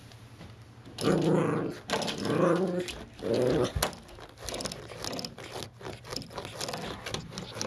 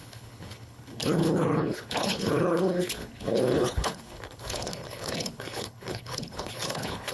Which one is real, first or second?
first